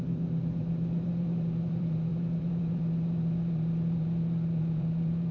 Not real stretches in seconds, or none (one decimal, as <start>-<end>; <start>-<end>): 0.0-5.3

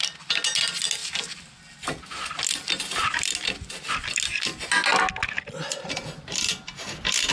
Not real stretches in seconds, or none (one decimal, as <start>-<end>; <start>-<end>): 6.5-7.3

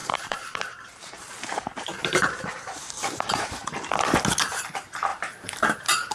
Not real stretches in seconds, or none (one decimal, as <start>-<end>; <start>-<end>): 0.0-3.7; 5.1-6.1

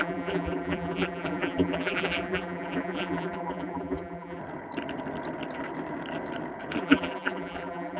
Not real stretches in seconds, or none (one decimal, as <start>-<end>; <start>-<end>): 0.0-4.4; 6.8-8.0

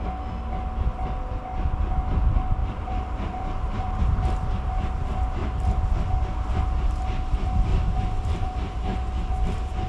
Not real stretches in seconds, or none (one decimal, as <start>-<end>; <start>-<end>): 2.6-4.0; 7.7-8.8

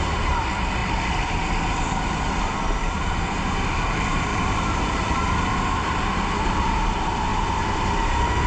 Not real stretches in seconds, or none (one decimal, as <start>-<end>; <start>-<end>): 4.3-5.4

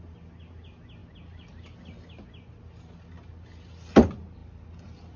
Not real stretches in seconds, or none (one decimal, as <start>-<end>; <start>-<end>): 4.4-5.2